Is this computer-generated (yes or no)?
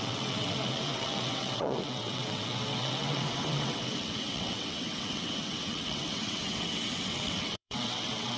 yes